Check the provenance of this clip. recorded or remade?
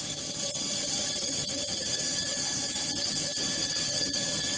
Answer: remade